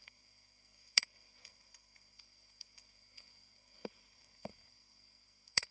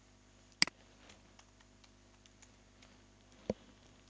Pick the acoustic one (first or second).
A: second